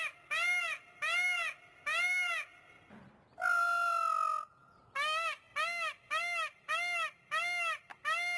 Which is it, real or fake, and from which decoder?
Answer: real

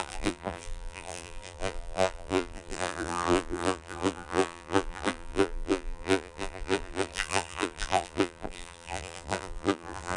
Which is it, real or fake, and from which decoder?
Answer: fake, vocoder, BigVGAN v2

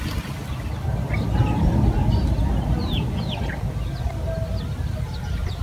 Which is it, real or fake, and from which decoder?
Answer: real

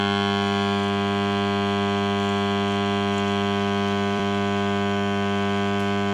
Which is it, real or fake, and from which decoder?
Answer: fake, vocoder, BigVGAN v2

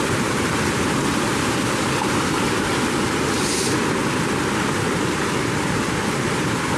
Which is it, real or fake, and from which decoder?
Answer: fake, vocoder, BigVGAN v2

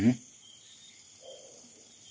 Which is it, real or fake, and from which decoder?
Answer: real